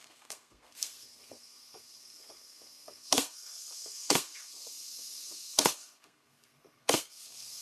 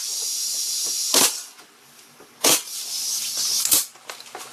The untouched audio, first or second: second